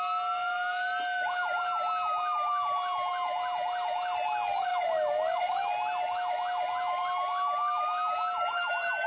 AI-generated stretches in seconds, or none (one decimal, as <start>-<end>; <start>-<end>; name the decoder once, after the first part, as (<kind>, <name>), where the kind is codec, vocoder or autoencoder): none

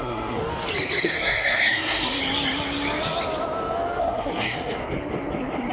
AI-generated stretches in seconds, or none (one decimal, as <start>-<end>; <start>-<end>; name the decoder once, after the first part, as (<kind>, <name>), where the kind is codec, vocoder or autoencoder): 0.0-0.4 (codec, SNAC); 1.0-2.2; 4.0-4.8